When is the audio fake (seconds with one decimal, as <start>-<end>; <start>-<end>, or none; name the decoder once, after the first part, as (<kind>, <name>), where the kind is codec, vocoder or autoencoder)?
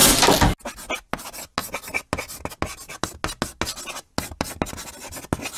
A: none